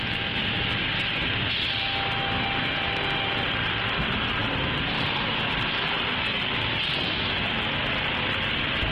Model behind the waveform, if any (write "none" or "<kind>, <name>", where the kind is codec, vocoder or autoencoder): none